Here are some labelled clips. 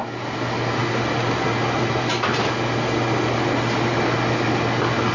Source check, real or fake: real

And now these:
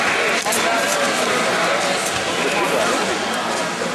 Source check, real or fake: real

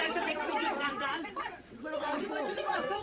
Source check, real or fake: fake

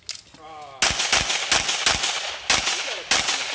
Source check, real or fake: real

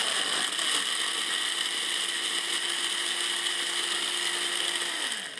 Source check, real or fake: real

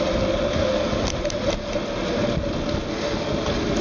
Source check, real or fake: real